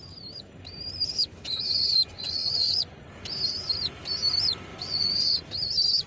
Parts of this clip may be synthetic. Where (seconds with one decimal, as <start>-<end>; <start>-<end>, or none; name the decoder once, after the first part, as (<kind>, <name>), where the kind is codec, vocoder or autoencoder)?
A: 2.1-3.0 (vocoder, Vocos); 4.7-5.5